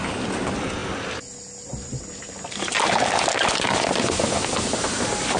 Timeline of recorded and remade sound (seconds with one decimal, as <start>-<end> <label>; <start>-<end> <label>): 0.0-5.4 recorded